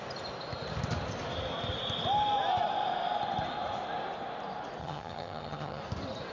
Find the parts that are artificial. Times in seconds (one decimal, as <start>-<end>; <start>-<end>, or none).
4.8-5.8